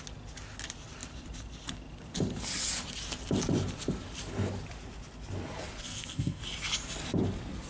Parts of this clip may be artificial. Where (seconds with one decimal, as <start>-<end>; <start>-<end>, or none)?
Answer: 5.8-6.4